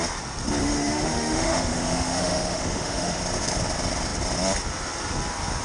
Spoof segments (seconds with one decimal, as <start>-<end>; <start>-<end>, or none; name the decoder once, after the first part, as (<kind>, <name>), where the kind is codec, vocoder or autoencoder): 0.6-3.2 (autoencoder, DAC-VAE)